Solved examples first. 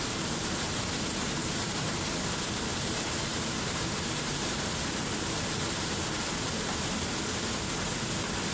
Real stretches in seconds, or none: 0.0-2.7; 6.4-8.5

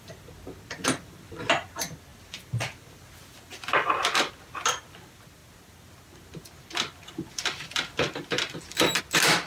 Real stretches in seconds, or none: 0.0-9.5

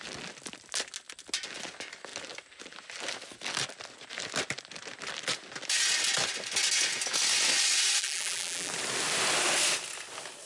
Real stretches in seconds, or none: 0.0-8.0; 8.7-10.5

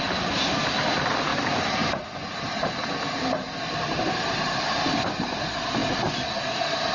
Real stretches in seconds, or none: 5.8-6.9